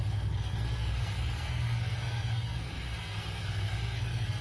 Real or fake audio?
fake